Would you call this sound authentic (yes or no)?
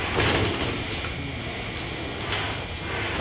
yes